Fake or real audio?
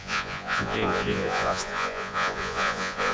fake